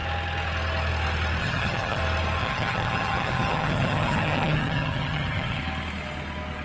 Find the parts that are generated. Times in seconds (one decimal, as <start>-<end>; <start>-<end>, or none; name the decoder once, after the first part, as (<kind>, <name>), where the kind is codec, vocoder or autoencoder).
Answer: 1.4-2.0 (vocoder, HiFi-GAN); 2.4-5.6